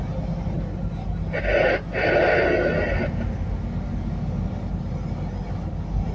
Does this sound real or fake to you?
real